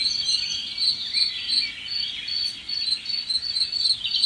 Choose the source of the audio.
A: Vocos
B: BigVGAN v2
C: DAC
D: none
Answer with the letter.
D